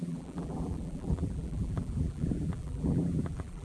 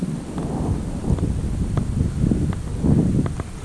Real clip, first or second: second